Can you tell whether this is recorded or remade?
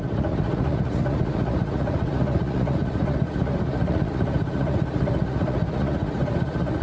remade